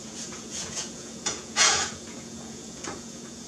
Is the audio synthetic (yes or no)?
yes